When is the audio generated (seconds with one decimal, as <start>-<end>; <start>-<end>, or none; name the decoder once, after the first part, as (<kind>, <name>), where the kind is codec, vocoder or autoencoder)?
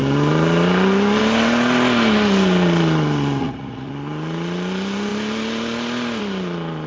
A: 3.4-3.9 (vocoder, Vocos)